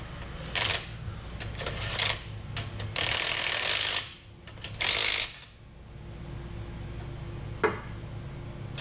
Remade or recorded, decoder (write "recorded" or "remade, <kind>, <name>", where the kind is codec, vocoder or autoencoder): recorded